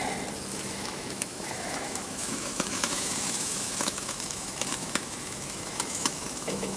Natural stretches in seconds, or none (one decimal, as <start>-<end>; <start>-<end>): 0.0-0.5